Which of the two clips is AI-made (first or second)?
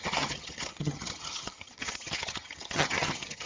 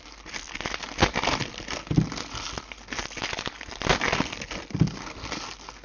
first